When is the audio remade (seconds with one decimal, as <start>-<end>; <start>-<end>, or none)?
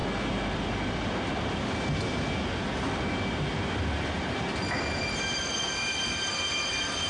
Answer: none